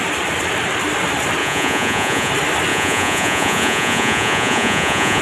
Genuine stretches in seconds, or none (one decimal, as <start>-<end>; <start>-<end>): 0.0-1.4; 2.3-2.7